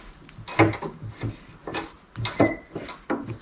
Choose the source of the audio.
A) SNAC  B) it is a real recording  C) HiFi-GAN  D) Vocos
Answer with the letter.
B